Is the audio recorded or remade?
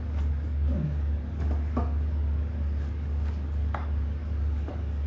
remade